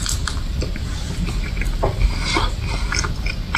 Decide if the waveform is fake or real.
real